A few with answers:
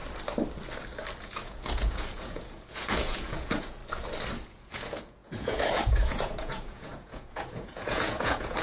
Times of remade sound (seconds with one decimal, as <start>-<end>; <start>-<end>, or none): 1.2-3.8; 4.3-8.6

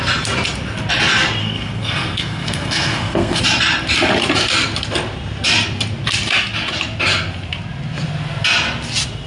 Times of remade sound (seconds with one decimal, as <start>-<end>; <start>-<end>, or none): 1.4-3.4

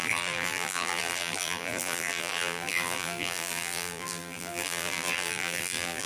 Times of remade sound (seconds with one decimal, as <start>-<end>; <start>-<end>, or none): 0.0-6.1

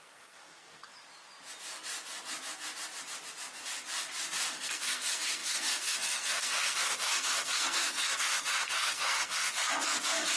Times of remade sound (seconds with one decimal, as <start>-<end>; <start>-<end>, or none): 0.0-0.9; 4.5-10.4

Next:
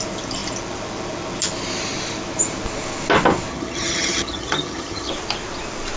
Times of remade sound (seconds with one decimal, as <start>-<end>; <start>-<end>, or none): 3.5-5.1

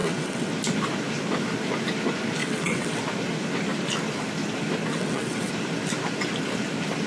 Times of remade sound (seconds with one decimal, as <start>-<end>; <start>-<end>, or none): 0.0-0.5; 2.4-3.0; 4.9-5.5

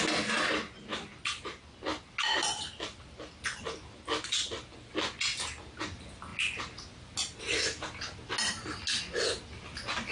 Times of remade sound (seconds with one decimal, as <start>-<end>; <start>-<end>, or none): none